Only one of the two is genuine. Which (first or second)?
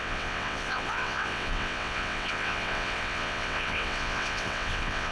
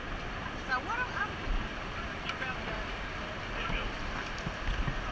second